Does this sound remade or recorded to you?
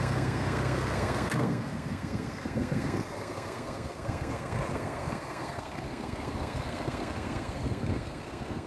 remade